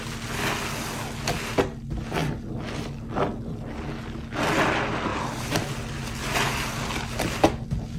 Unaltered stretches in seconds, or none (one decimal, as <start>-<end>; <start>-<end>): 0.0-5.1; 5.7-6.2; 6.8-8.0